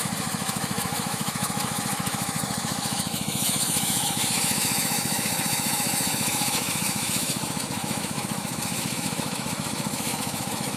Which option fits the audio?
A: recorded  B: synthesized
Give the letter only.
B